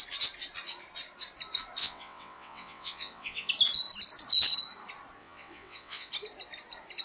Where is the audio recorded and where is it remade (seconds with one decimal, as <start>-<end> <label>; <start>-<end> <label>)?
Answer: 0.0-1.8 recorded; 1.8-3.5 remade; 3.5-5.2 recorded; 5.2-6.1 remade; 6.1-7.0 recorded